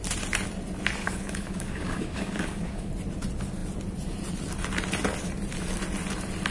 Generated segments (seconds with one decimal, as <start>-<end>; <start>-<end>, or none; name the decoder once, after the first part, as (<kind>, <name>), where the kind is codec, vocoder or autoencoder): 1.0-2.9 (codec, DAC)